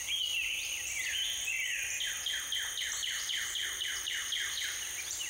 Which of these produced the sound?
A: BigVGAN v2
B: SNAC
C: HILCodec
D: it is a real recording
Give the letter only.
D